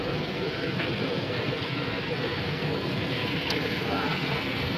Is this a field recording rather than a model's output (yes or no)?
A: no